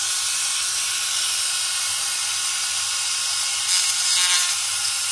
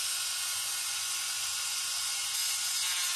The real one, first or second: first